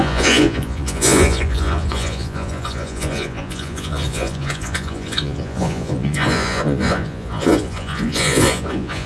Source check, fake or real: fake